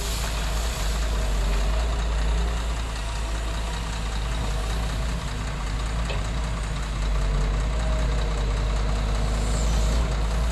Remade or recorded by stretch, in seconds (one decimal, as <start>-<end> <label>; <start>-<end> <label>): 0.0-10.5 recorded